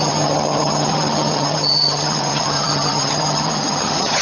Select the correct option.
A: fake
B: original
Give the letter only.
A